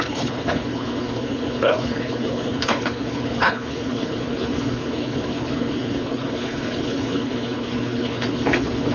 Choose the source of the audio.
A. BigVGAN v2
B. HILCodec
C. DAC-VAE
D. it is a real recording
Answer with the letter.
B